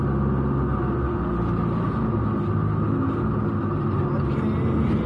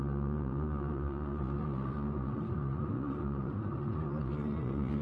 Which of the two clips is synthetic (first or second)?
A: second